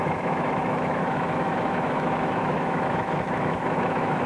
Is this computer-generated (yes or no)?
yes